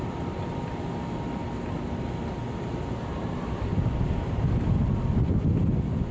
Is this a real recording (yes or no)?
yes